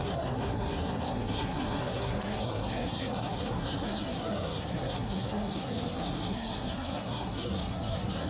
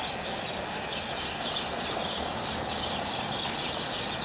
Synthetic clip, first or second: first